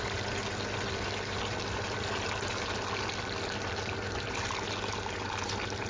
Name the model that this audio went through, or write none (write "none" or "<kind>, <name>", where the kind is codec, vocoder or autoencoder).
none